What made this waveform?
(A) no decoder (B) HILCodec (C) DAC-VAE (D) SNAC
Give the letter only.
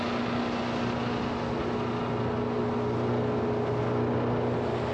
A